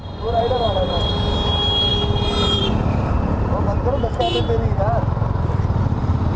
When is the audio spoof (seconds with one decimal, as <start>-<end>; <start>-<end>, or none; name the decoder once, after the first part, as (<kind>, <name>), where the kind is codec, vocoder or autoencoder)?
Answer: 0.0-1.1 (vocoder, Vocos)